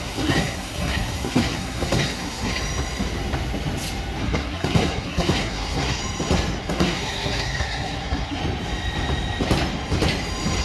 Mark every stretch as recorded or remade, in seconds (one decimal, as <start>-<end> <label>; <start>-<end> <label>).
0.0-2.5 remade; 2.5-4.2 recorded; 4.2-6.0 remade; 6.0-6.6 recorded; 6.6-8.4 remade; 8.4-10.6 recorded